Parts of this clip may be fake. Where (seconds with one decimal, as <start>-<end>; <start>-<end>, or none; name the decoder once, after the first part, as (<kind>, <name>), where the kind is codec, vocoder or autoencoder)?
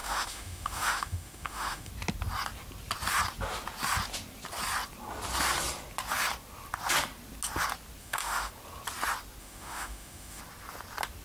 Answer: 0.0-1.9 (autoencoder, DAC-VAE); 8.0-8.5; 9.4-10.4